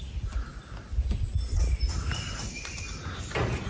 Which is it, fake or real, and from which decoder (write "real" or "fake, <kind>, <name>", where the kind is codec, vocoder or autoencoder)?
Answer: real